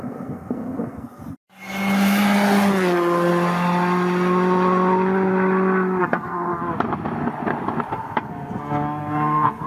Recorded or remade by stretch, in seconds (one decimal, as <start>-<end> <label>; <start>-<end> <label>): 0.0-1.2 remade; 1.2-6.0 recorded; 6.0-6.5 remade; 6.5-7.9 recorded; 7.9-9.7 remade